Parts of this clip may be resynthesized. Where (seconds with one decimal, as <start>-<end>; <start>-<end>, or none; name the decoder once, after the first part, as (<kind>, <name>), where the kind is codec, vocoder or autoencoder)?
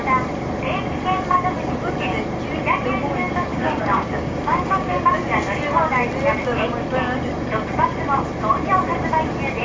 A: 3.5-5.0 (codec, DAC)